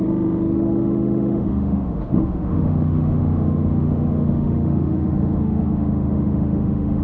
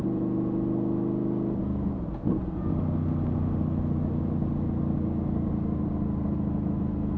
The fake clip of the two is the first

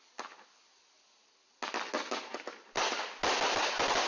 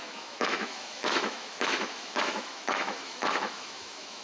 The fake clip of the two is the second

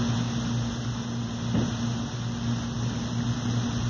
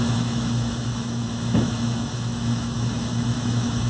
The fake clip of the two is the second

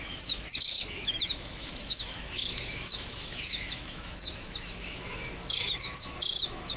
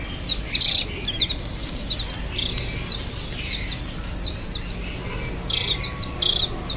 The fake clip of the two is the first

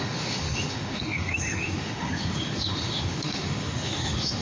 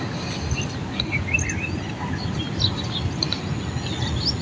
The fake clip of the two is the first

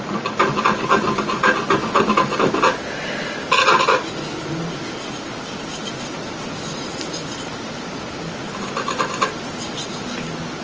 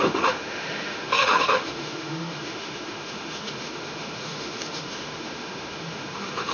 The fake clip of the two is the second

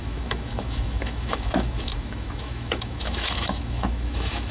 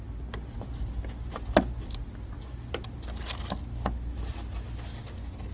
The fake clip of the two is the first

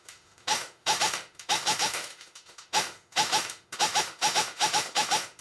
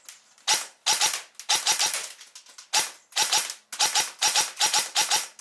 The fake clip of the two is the first